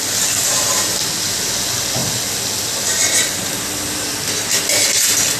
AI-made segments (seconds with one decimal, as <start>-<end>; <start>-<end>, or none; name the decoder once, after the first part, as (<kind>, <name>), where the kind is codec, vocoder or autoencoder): none